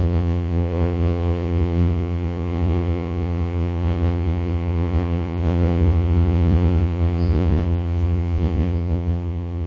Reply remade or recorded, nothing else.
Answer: remade